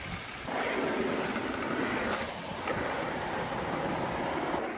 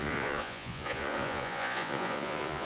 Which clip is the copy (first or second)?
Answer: second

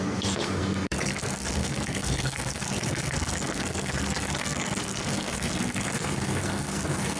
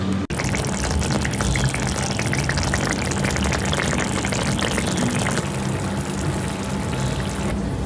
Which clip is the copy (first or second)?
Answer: first